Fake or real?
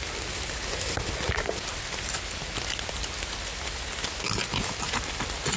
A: real